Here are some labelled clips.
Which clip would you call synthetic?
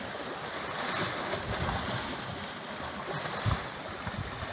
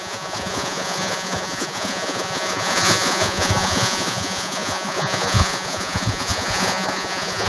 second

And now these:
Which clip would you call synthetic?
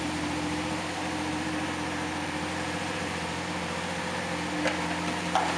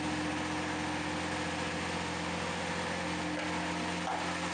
first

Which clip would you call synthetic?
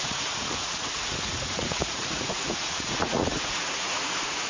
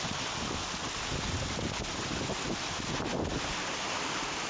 first